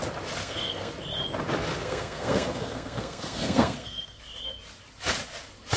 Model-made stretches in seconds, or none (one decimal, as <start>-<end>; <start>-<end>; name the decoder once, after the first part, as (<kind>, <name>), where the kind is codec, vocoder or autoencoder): 0.4-0.9 (codec, SNAC); 1.7-4.2